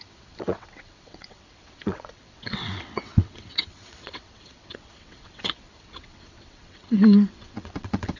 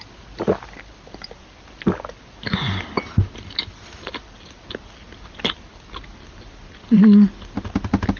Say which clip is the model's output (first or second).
first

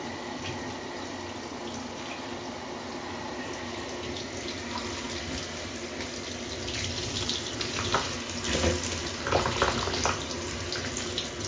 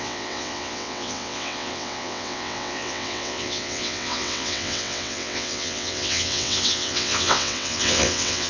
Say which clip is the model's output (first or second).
second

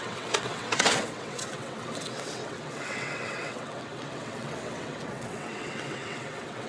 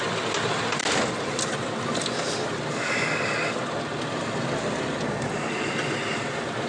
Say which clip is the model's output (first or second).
first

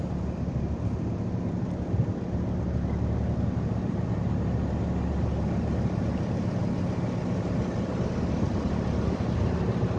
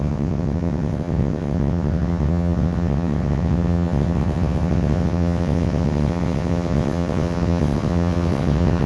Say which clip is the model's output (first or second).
second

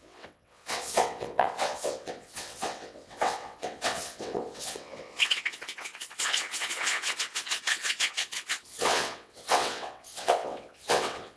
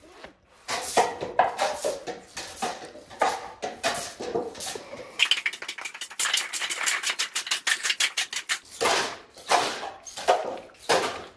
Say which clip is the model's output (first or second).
first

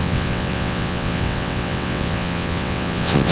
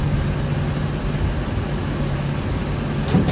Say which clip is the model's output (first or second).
first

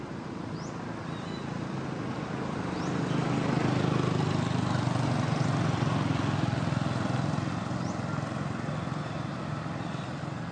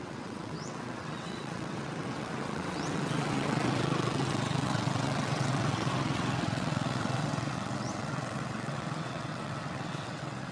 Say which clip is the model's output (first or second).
second